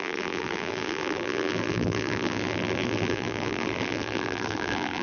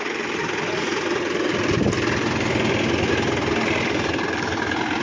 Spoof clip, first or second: first